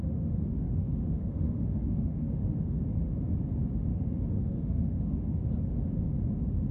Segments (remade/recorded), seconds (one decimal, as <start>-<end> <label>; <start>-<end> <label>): 0.0-2.8 remade; 2.8-3.9 recorded; 3.9-5.5 remade; 5.5-6.7 recorded